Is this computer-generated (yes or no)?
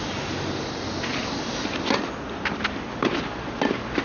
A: no